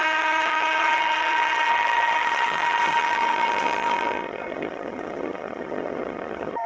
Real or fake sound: fake